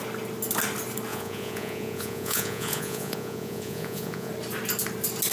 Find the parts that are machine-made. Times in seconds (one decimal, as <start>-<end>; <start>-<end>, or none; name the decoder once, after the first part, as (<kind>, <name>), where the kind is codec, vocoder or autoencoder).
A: 1.1-4.3 (vocoder, Vocos)